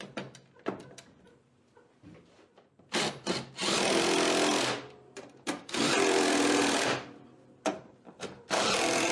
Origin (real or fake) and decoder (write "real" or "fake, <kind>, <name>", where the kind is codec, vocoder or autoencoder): fake, vocoder, BigVGAN v2